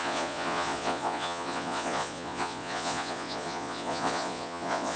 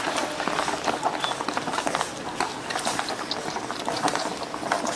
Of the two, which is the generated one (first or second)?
first